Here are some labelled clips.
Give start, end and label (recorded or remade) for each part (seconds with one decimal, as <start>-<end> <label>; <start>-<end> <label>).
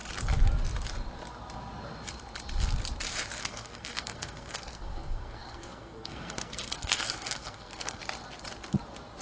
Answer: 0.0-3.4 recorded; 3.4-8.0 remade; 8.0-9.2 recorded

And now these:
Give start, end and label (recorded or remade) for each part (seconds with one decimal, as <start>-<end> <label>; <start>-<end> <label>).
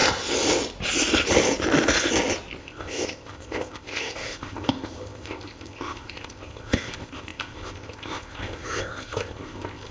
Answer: 0.0-2.6 recorded; 2.6-9.9 remade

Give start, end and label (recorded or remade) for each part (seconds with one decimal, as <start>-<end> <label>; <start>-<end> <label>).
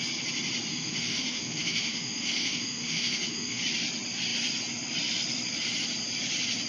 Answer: 0.0-0.7 recorded; 0.7-3.6 remade; 3.6-6.7 recorded